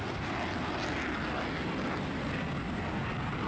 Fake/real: real